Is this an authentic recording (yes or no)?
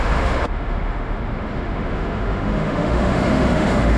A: no